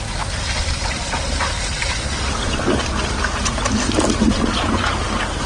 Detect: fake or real real